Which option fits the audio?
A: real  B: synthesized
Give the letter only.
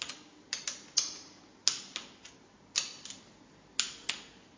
A